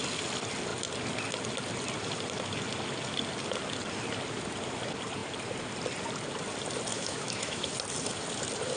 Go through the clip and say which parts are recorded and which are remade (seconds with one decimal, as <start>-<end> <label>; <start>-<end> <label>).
0.0-6.9 recorded; 6.9-7.7 remade; 7.7-8.8 recorded